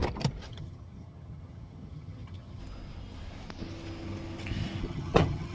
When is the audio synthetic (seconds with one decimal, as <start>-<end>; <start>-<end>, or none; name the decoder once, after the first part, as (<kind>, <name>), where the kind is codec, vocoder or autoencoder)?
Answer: 0.5-2.6 (vocoder, HiFi-GAN); 4.8-5.5